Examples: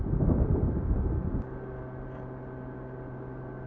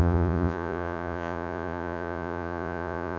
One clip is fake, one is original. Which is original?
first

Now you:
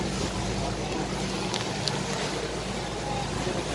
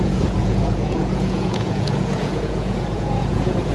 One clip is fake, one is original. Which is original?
first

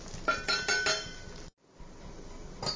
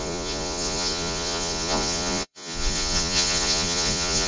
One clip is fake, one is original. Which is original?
first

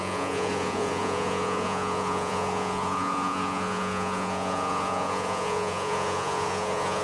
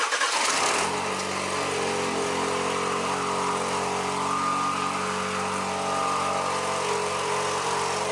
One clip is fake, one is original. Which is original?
second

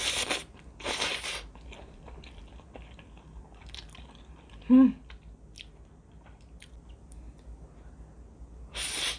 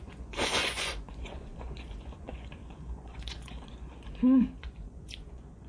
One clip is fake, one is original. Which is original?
first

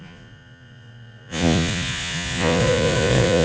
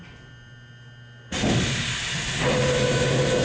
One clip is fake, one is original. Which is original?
second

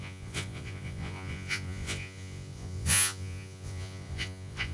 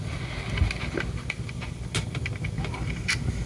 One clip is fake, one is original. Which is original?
second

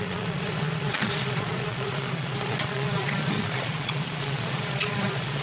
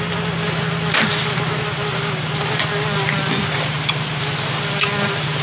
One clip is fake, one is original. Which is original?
second